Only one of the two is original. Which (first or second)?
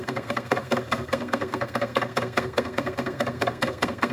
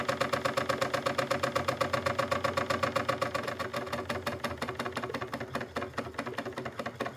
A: second